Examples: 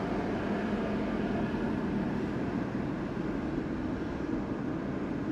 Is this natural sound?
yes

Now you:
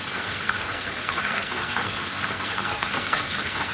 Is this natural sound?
no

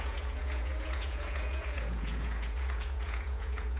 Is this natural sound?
no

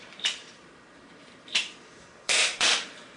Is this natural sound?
no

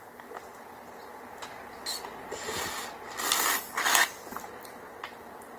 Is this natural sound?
yes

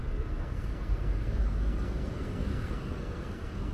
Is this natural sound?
no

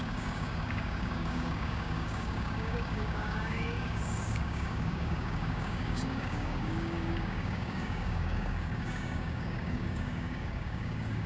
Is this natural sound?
no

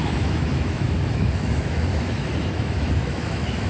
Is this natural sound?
no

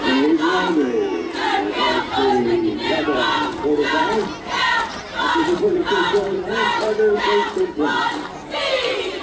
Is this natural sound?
yes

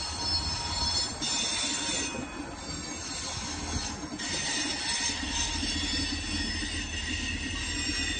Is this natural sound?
yes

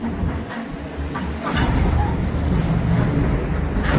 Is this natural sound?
yes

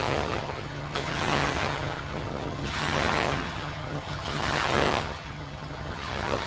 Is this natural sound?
no